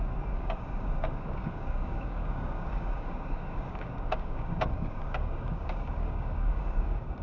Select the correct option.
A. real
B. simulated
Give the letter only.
B